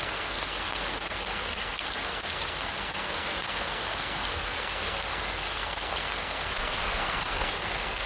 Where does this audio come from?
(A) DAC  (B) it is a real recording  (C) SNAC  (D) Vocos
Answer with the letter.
C